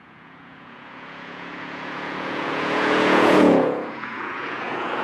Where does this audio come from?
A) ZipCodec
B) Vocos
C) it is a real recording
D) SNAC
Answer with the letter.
B